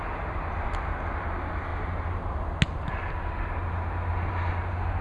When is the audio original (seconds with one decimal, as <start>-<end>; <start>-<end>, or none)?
0.0-5.0